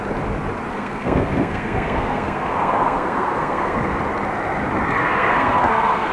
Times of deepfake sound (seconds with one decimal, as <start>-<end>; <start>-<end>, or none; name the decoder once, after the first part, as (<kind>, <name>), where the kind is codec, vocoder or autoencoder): 0.7-4.0 (codec, SNAC); 5.0-6.1